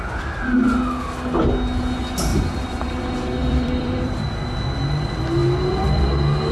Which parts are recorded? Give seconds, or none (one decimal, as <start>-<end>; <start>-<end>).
0.0-2.3; 3.0-3.4; 4.2-5.4; 6.0-6.5